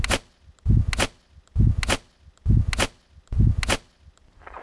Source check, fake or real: real